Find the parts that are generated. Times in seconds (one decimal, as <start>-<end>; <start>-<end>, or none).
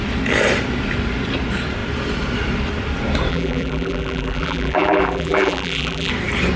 3.3-6.1